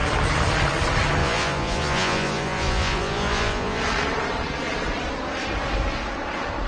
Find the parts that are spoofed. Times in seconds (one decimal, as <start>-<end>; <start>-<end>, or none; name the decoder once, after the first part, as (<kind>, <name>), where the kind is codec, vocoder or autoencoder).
1.2-3.8 (vocoder, Vocos)